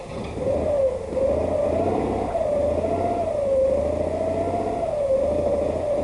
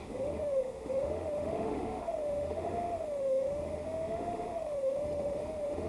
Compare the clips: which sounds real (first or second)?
first